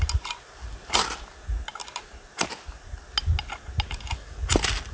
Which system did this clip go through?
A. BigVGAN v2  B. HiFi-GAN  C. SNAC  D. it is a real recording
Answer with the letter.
D